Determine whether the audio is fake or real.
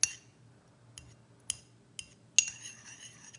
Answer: real